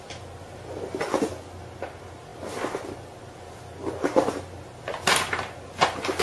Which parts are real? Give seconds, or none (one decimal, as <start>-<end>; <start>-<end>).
0.0-6.2